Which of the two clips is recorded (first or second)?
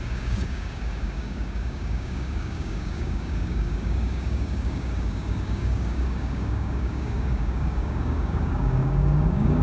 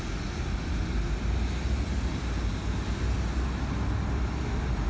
second